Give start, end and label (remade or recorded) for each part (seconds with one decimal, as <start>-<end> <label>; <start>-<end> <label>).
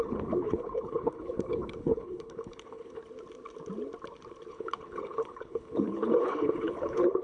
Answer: 0.0-3.0 remade; 3.0-4.5 recorded; 4.5-7.2 remade